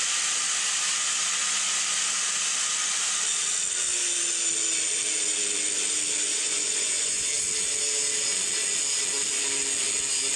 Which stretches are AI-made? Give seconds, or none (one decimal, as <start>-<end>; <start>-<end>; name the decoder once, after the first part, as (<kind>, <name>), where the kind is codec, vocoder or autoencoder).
6.3-7.3 (vocoder, Vocos)